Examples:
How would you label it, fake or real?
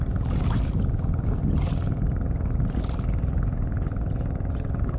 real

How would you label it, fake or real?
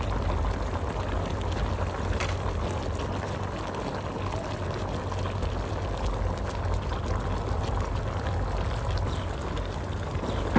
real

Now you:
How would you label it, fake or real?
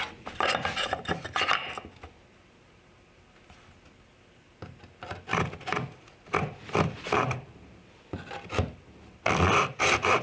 real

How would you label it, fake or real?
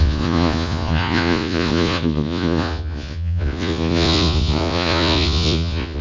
fake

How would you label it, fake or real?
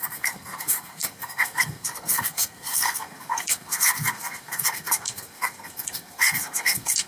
fake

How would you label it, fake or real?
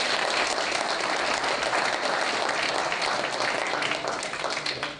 real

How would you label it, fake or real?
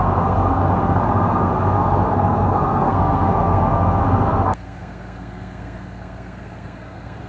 fake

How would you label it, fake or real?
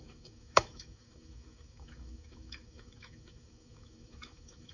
fake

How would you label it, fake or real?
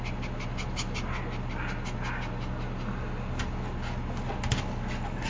real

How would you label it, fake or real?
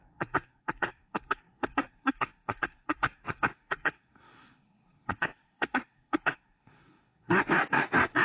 fake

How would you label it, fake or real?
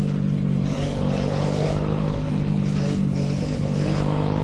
fake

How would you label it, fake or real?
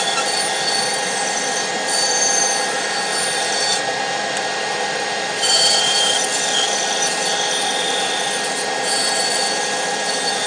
real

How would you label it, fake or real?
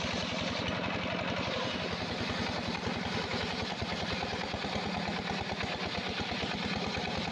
real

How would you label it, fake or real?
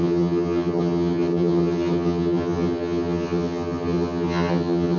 fake